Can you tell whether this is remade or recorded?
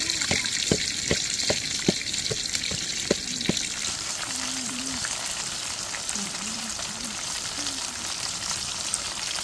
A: remade